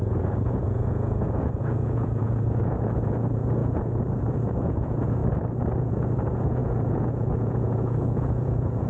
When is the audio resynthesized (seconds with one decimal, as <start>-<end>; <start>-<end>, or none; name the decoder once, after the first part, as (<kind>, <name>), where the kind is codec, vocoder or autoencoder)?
0.0-5.2 (vocoder, Vocos); 5.8-8.9